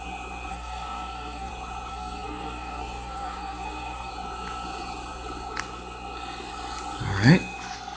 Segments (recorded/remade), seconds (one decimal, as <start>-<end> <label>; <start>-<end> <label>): 0.0-0.5 recorded; 0.5-1.5 remade; 1.5-1.9 recorded; 1.9-4.1 remade; 4.1-8.0 recorded